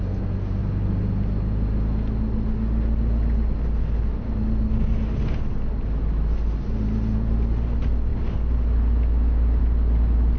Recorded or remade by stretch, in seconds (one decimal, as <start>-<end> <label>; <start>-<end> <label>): 0.0-10.4 recorded